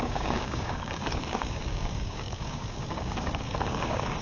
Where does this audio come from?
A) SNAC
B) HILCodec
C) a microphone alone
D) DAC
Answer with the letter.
D